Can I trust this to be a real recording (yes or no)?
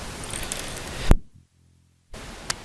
yes